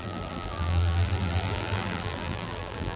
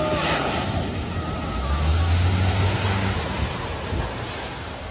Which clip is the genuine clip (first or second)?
second